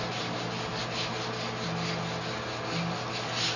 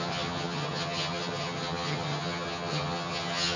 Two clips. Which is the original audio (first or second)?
first